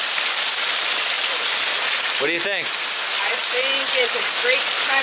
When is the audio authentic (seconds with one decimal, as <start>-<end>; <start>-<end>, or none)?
0.0-5.0